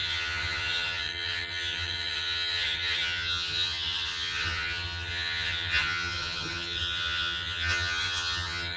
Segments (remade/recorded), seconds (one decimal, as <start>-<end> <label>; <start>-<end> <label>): 0.0-8.8 remade